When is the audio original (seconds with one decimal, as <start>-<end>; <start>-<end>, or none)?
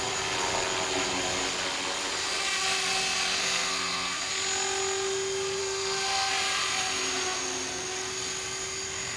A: 0.0-3.4; 4.3-5.6; 6.3-9.2